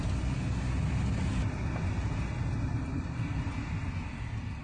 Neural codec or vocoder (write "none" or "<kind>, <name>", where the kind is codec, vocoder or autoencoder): none